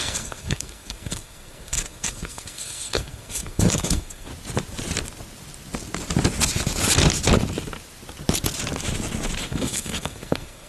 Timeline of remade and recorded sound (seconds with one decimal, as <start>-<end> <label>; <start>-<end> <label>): 0.0-4.3 remade; 4.3-9.4 recorded; 9.4-10.7 remade